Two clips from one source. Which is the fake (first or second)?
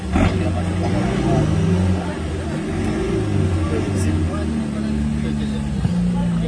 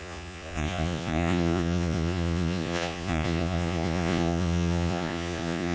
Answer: second